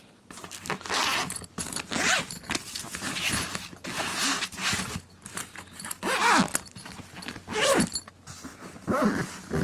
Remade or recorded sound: recorded